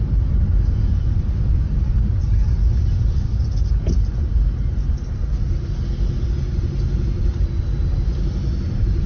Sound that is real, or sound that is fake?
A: real